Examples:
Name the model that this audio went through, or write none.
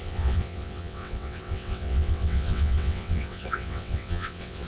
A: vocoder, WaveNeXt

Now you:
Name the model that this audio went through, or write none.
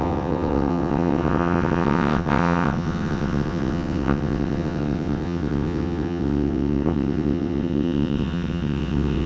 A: vocoder, WaveNeXt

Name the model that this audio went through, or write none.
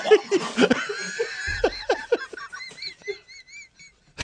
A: none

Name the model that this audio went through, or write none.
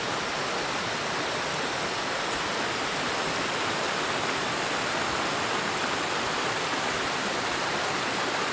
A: none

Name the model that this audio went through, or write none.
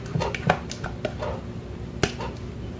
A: none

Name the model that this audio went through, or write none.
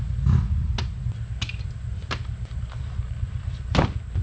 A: none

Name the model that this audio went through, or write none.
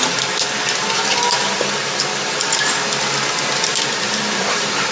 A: none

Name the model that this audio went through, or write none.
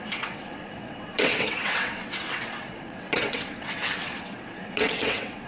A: vocoder, WaveNeXt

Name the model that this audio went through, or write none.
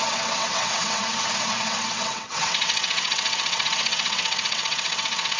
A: vocoder, WaveNeXt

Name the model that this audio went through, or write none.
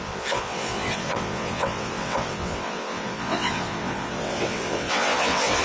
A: vocoder, WaveNeXt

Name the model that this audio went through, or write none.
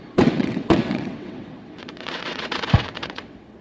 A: vocoder, WaveNeXt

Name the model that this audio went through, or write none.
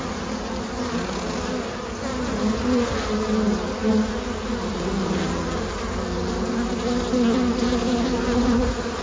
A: none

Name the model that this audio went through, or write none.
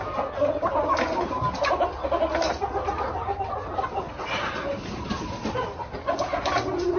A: none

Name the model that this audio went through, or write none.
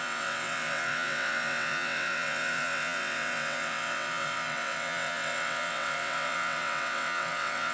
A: vocoder, WaveNeXt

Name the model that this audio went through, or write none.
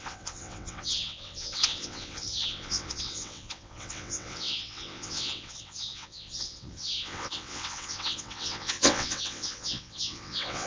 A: vocoder, WaveNeXt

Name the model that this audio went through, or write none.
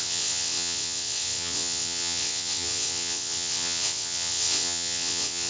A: vocoder, WaveNeXt